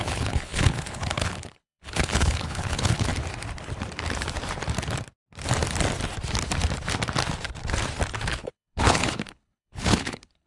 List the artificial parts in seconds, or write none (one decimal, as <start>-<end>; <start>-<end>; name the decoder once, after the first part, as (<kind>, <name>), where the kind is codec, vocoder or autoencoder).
0.0-3.1 (codec, HILCodec); 8.3-10.5